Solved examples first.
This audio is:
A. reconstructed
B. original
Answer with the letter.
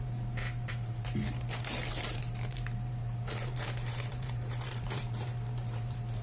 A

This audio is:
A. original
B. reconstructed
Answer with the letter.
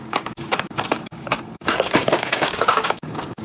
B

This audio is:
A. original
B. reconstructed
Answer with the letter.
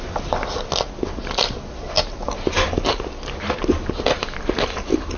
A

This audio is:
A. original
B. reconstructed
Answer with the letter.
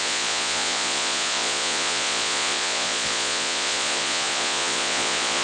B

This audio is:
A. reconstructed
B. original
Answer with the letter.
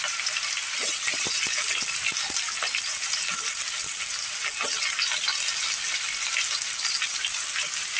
B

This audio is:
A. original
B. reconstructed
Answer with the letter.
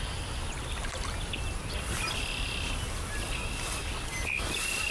A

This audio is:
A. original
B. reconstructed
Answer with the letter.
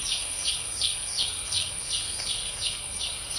B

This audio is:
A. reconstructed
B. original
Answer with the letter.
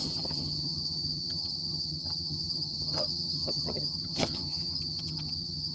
A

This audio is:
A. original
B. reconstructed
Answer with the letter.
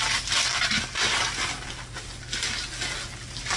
A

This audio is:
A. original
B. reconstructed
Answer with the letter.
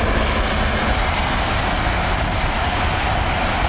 A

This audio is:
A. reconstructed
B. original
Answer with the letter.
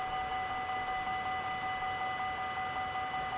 B